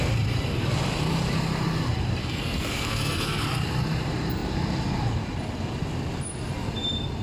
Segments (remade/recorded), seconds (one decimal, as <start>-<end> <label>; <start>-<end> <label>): 0.0-2.2 recorded; 2.2-3.4 remade; 3.4-7.2 recorded